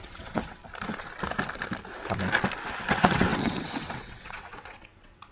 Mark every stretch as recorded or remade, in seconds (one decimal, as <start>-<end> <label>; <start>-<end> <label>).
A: 0.0-0.6 remade; 0.6-2.9 recorded; 2.9-5.3 remade